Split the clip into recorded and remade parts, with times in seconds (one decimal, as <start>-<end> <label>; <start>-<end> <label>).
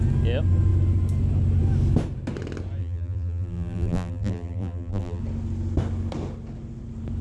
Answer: 0.0-2.8 recorded; 2.8-5.2 remade; 5.2-7.2 recorded